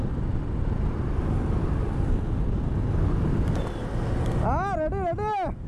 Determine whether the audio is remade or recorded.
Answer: recorded